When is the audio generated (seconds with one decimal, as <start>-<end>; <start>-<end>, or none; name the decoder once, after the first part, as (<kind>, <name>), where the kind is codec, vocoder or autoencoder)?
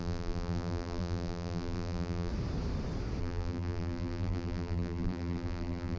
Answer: 0.0-2.3 (vocoder, BigVGAN v2); 3.2-6.0